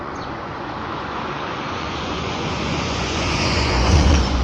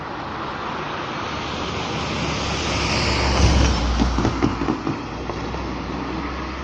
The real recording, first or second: second